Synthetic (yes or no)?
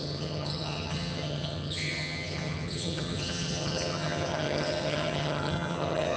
yes